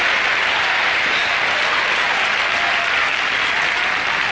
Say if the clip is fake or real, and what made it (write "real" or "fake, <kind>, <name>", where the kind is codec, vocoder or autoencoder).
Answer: real